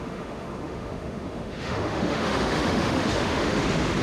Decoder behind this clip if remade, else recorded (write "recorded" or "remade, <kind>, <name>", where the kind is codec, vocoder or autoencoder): remade, autoencoder, DAC-VAE